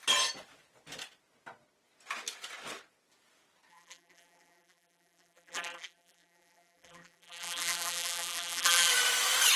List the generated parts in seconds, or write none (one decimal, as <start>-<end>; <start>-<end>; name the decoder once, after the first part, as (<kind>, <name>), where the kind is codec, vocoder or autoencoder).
3.7-8.9 (vocoder, BigVGAN v2)